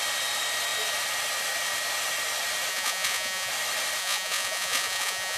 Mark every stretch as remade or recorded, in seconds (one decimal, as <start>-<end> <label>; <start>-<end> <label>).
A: 0.0-2.7 recorded; 2.7-3.5 remade; 3.5-4.0 recorded; 4.0-5.4 remade